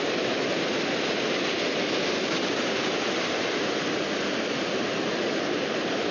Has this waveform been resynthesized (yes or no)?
yes